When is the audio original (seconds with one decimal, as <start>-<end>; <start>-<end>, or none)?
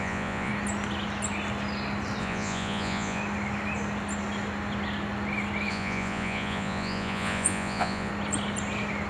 0.5-2.2; 3.2-5.7; 8.1-9.1